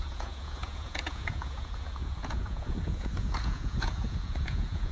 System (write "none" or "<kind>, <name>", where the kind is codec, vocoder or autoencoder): vocoder, Vocos